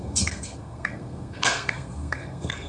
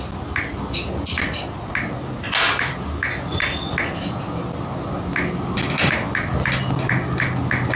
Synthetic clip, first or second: first